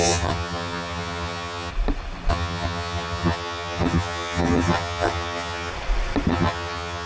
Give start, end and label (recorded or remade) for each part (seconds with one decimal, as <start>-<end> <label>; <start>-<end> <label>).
0.0-1.7 remade; 1.7-2.3 recorded; 2.3-5.7 remade; 5.7-6.3 recorded; 6.3-7.1 remade